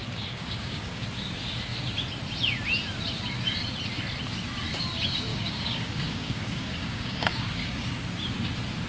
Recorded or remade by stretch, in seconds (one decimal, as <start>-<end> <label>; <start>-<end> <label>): 0.0-1.0 remade; 1.0-5.3 recorded; 5.3-8.0 remade; 8.0-8.9 recorded